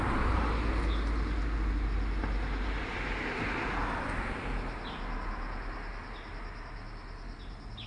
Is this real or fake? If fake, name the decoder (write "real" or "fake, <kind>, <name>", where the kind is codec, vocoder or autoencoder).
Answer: real